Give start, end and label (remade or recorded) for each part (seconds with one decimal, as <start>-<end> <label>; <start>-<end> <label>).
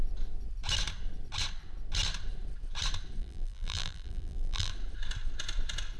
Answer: 0.0-3.2 recorded; 3.2-4.7 remade; 4.7-6.0 recorded